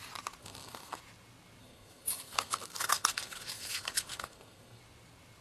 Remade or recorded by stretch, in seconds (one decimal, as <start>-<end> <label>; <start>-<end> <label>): 0.0-0.4 recorded; 0.4-1.0 remade; 1.0-1.6 recorded; 1.6-4.8 remade; 4.8-5.4 recorded

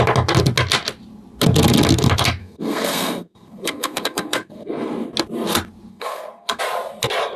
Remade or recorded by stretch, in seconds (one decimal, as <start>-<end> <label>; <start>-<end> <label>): 0.0-2.4 recorded; 2.4-4.7 remade; 4.7-5.9 recorded; 5.9-6.6 remade; 6.6-7.4 recorded

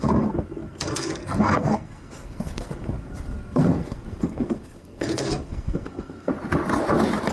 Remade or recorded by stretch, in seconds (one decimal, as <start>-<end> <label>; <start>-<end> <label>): 0.0-6.3 remade; 6.3-7.3 recorded